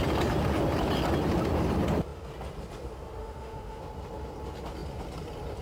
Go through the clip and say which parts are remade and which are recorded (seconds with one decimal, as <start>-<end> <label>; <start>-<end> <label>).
0.0-3.2 recorded; 3.2-3.8 remade; 3.8-5.6 recorded

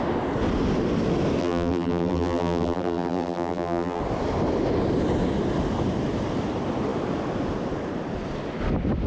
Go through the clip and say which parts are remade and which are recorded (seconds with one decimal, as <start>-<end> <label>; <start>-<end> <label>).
0.0-1.4 recorded; 1.4-4.0 remade; 4.0-9.1 recorded

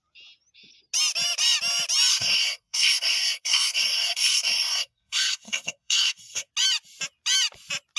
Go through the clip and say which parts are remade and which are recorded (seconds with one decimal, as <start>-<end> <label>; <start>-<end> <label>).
0.0-2.1 recorded; 2.1-6.5 remade; 6.5-8.0 recorded